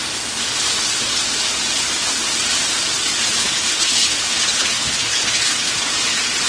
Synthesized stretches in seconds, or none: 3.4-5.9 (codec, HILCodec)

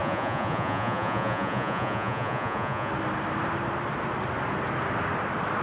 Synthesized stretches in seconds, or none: 0.0-2.9 (vocoder, Vocos)

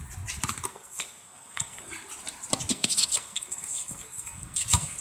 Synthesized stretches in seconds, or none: 0.7-1.9 (codec, SNAC); 2.7-5.0